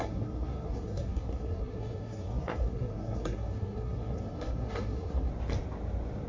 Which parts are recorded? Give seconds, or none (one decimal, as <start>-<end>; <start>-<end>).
5.3-6.3